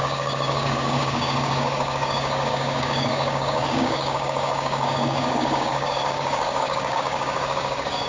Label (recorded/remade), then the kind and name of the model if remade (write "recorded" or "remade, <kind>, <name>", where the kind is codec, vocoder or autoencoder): remade, codec, DAC